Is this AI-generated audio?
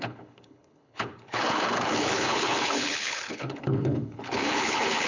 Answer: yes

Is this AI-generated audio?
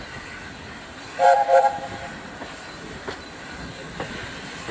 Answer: no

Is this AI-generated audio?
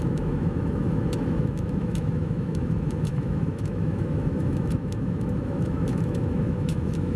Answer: yes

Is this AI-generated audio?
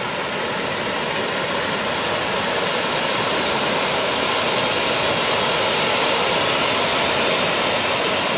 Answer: no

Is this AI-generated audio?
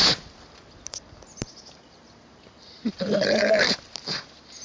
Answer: no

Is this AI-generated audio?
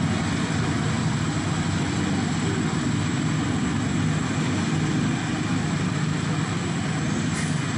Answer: no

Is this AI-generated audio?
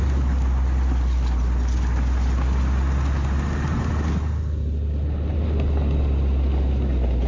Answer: no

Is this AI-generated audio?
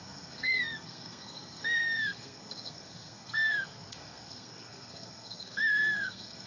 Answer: yes